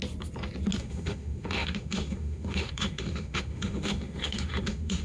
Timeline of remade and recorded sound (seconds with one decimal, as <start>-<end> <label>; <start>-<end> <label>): 0.0-0.8 recorded; 0.8-5.0 remade